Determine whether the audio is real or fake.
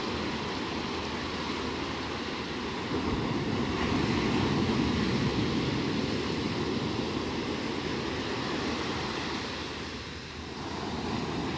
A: real